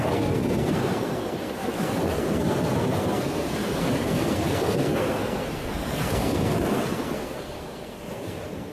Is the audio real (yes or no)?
no